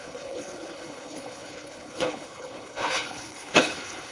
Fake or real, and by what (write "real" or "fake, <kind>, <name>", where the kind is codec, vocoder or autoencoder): fake, codec, HILCodec